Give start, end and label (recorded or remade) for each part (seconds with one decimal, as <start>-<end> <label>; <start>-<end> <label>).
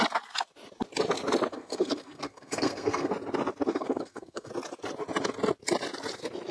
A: 0.0-1.5 recorded; 1.5-3.1 remade; 3.1-3.7 recorded; 3.7-4.5 remade; 4.5-6.5 recorded